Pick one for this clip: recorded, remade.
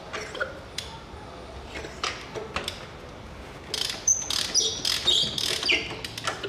recorded